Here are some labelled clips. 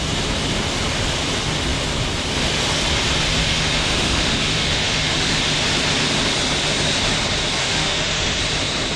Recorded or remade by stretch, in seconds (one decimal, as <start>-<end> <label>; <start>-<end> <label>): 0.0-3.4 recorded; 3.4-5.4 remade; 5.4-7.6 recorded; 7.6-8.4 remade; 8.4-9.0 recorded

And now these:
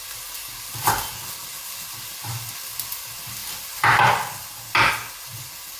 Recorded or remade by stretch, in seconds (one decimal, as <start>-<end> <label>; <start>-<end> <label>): 0.0-5.8 recorded

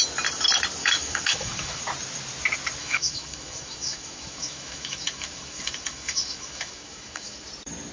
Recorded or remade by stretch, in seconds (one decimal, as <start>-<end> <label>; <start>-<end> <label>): 0.0-0.8 recorded; 0.8-1.8 remade; 1.8-2.8 recorded; 2.8-7.5 remade; 7.5-7.9 recorded

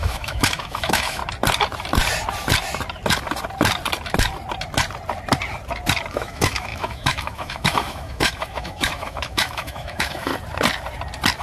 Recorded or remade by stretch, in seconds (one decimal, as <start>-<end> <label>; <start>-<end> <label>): 0.0-1.2 remade; 1.2-6.1 recorded; 6.1-10.3 remade; 10.3-11.4 recorded

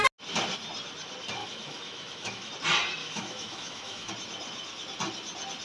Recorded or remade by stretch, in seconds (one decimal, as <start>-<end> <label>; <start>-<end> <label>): 0.0-1.4 recorded; 1.4-2.5 remade; 2.5-3.0 recorded; 3.0-4.1 remade; 4.1-5.6 recorded

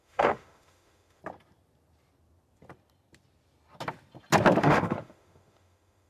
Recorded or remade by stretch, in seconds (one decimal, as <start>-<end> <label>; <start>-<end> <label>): 0.0-1.2 remade; 1.2-4.6 recorded; 4.6-6.1 remade

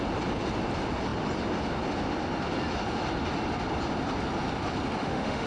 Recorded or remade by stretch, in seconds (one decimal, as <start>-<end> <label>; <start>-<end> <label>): 0.0-5.0 recorded; 5.0-5.5 remade